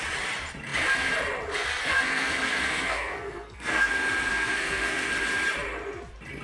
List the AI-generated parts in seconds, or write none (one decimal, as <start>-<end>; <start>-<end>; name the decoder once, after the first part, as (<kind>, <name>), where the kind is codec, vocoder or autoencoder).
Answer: 1.8-3.9 (codec, SNAC); 4.3-5.1